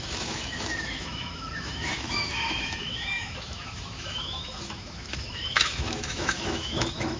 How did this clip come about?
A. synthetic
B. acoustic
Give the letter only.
A